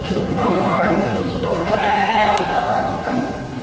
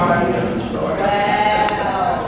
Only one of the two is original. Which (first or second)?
second